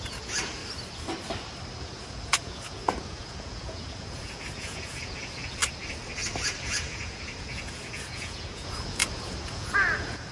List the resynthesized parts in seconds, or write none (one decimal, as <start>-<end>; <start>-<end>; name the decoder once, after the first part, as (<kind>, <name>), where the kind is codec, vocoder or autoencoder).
0.0-0.6 (vocoder, Vocos); 1.8-5.6; 6.6-10.3